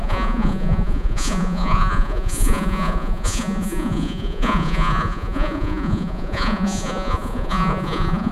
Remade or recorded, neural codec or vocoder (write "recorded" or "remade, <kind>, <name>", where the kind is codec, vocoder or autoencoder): remade, vocoder, Vocos